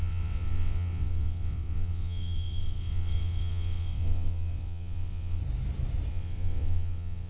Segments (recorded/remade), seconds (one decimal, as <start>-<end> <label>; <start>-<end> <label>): 0.0-5.4 remade; 5.4-6.1 recorded; 6.1-7.3 remade